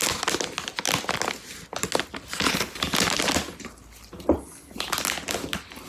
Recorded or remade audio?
recorded